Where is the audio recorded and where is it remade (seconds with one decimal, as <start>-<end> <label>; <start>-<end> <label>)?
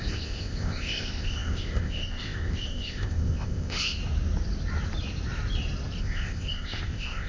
0.0-4.0 remade; 4.0-6.0 recorded; 6.0-7.3 remade